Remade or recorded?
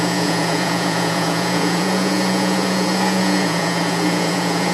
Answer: remade